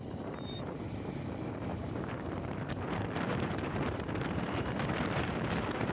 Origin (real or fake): fake